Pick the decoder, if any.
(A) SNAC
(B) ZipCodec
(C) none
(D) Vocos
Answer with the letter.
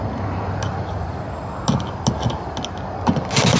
C